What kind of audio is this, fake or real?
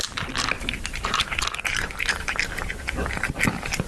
real